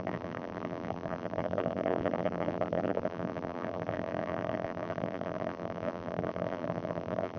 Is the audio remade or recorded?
remade